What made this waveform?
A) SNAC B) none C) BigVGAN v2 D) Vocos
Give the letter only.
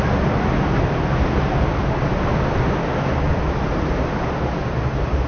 B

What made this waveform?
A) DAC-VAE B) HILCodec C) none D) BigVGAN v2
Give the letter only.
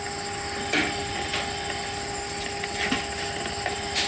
C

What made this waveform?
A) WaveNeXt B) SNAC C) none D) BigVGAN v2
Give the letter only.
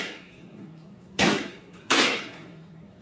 B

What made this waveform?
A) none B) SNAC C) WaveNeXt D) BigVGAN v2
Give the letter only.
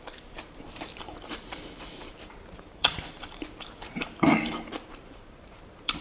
D